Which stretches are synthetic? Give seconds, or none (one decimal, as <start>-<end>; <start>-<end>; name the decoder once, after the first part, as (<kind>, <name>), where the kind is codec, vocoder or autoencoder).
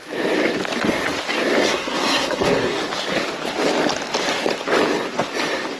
1.7-2.8 (codec, SNAC)